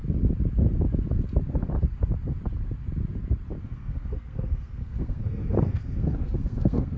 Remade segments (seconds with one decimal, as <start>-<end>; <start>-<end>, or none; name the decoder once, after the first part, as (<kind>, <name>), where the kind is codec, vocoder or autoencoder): 3.6-7.0 (codec, SNAC)